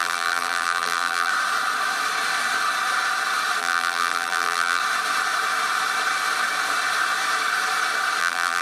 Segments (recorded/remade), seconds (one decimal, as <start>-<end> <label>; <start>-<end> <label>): 0.0-1.3 remade; 1.3-3.6 recorded; 3.6-4.8 remade; 4.8-8.2 recorded; 8.2-8.6 remade